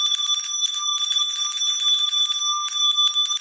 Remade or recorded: recorded